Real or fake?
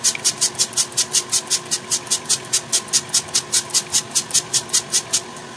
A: real